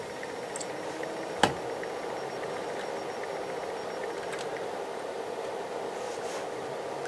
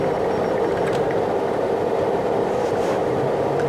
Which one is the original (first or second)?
first